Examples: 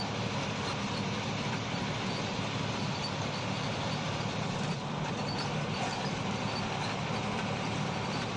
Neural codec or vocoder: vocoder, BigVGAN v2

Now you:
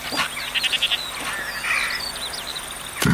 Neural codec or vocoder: none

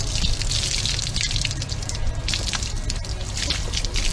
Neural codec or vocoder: none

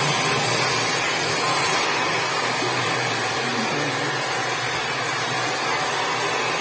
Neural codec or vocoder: none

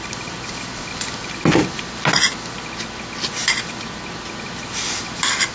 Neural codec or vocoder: none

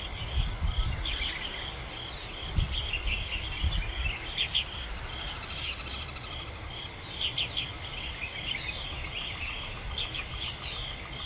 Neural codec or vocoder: vocoder, BigVGAN v2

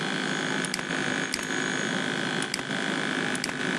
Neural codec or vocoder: none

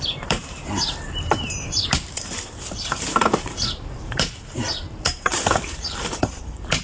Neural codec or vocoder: vocoder, BigVGAN v2